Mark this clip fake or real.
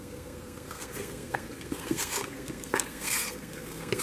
fake